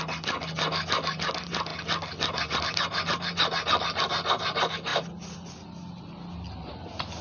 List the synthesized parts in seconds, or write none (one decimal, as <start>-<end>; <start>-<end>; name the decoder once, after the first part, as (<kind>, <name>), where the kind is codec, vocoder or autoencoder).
none